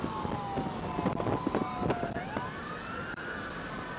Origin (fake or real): real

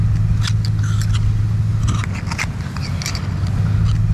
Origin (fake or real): real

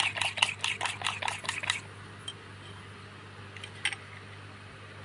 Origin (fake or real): real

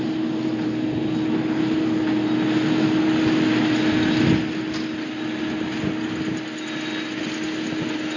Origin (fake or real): real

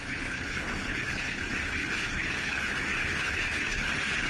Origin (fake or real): fake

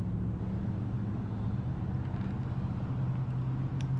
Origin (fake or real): real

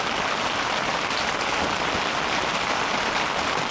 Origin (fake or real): real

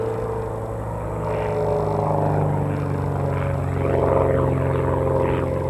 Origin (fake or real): real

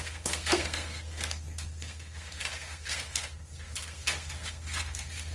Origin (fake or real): fake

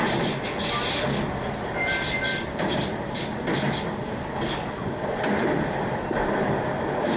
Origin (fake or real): real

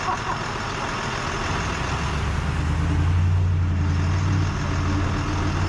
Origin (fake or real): real